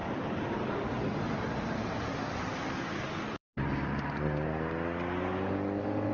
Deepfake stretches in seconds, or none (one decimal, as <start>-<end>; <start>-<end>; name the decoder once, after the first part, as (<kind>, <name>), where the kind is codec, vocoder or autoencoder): none